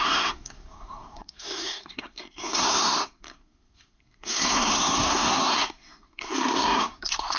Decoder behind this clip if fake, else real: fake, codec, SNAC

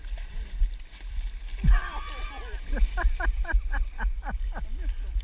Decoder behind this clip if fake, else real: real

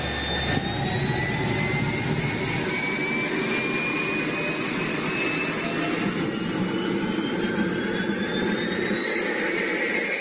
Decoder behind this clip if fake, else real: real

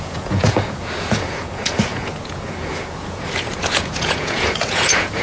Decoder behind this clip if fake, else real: fake, vocoder, Vocos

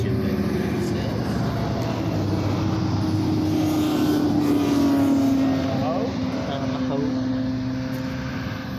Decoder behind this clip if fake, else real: real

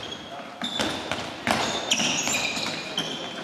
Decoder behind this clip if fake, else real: real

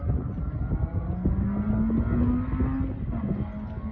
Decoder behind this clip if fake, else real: real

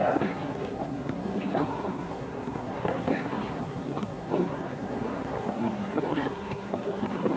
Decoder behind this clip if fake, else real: fake, codec, SNAC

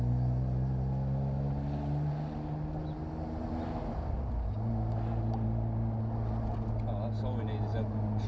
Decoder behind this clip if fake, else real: real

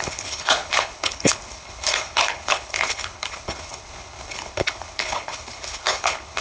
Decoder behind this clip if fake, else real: fake, codec, HILCodec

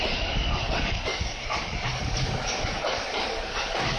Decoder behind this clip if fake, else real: fake, codec, DAC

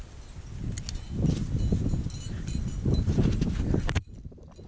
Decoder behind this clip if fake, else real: real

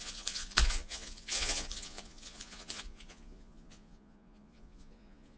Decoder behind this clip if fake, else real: fake, vocoder, Vocos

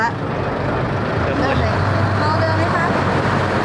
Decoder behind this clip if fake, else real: real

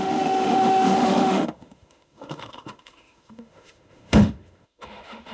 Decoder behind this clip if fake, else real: fake, autoencoder, DAC-VAE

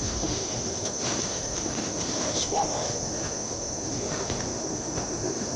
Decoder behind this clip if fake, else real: fake, autoencoder, DAC-VAE